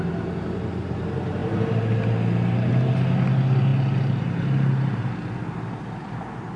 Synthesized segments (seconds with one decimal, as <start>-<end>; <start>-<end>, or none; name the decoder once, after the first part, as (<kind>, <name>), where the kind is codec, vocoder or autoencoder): none